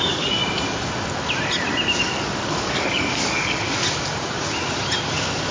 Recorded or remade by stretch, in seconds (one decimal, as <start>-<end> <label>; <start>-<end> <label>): 0.0-0.4 remade; 0.4-2.0 recorded; 2.0-3.8 remade; 3.8-5.1 recorded; 5.1-5.5 remade

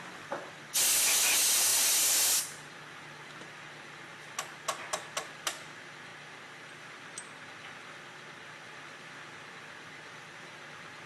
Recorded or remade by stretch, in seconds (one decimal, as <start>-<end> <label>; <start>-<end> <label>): 0.0-11.1 recorded